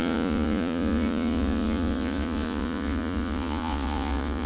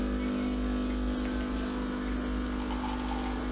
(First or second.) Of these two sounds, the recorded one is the second